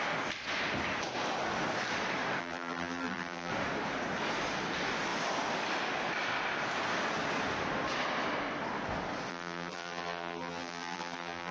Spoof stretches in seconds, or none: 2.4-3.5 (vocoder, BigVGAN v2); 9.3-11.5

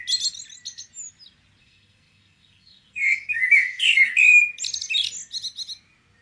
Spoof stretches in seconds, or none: 1.6-4.2 (codec, SNAC)

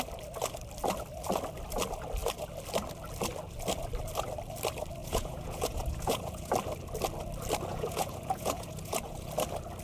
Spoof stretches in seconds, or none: 5.0-6.5 (vocoder, Vocos); 7.7-9.3

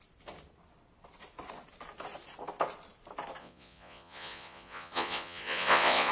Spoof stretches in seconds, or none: 3.4-6.1 (vocoder, Vocos)

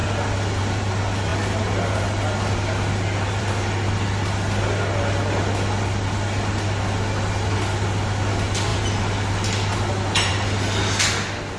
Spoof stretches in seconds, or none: none

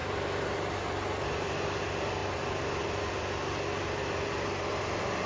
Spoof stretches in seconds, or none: none

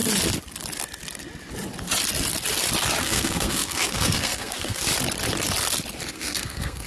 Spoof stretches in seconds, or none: 3.0-4.9 (codec, SNAC); 6.1-6.9

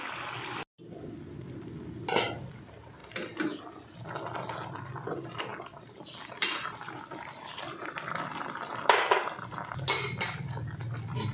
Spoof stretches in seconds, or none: none